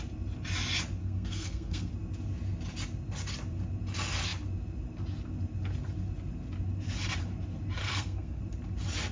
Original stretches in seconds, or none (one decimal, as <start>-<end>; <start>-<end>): 0.0-1.0; 1.9-7.8; 8.4-9.1